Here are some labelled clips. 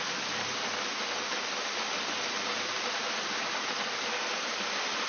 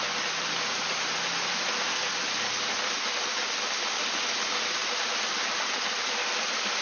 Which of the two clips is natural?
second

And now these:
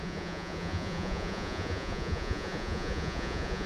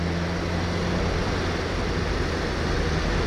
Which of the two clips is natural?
second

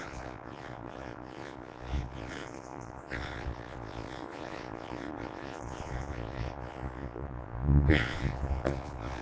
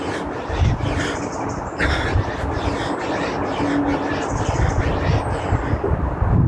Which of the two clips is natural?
second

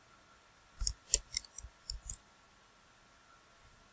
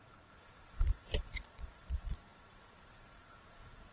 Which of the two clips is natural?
first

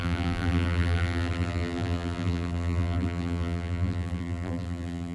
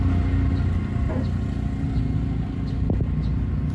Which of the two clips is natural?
second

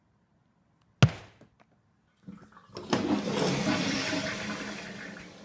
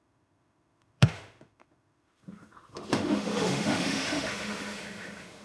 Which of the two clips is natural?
first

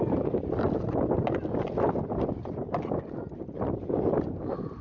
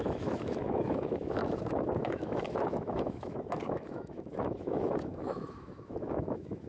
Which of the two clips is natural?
first